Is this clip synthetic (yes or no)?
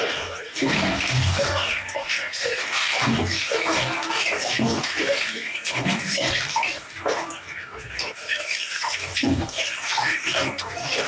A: yes